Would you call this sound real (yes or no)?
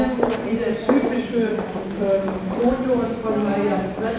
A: yes